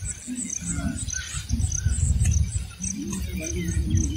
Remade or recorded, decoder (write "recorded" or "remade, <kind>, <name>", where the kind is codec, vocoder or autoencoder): recorded